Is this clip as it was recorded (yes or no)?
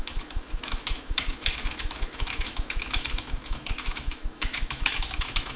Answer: no